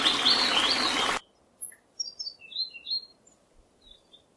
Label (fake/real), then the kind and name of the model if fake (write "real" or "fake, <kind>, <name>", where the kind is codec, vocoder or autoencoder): real